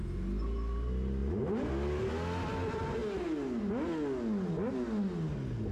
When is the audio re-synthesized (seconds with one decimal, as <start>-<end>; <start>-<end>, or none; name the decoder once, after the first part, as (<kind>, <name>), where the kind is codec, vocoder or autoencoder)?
1.2-1.7 (vocoder, BigVGAN v2)